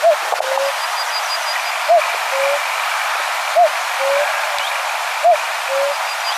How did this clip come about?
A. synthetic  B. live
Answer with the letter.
B